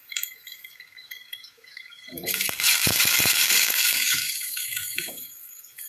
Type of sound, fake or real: fake